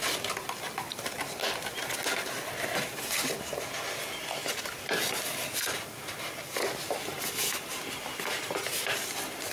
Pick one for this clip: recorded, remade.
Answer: recorded